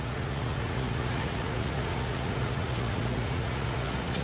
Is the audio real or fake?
fake